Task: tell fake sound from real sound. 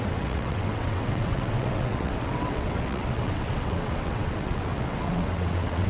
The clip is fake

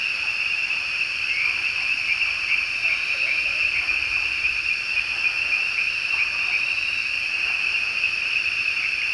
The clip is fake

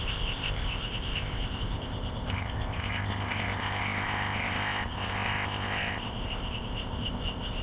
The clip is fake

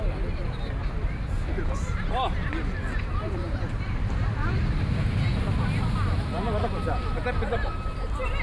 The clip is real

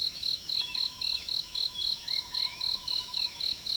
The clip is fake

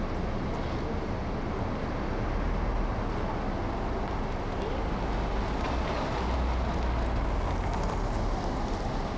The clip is real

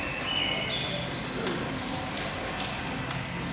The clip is real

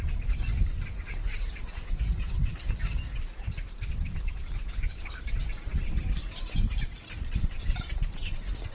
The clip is fake